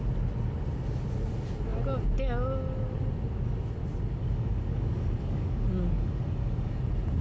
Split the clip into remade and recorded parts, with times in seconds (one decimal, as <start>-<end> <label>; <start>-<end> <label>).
0.0-4.2 recorded; 4.2-6.8 remade; 6.8-7.2 recorded